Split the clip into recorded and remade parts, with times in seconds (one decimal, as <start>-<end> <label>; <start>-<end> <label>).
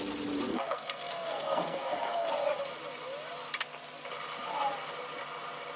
0.0-0.5 recorded; 0.5-2.3 remade; 2.3-5.8 recorded